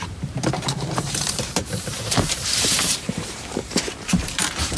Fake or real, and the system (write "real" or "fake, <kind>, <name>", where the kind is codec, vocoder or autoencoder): fake, vocoder, BigVGAN v2